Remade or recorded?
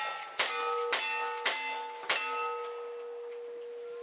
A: recorded